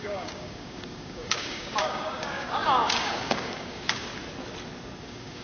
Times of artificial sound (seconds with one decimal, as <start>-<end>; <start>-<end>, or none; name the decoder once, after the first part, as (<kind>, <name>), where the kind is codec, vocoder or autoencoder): 0.0-4.1 (codec, DAC); 5.0-5.4